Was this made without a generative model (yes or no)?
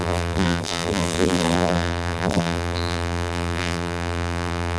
no